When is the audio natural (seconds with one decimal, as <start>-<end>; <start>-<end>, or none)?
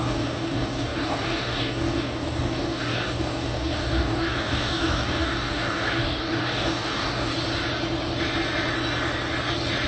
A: 7.3-9.9